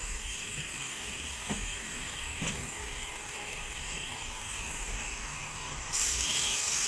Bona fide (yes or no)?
no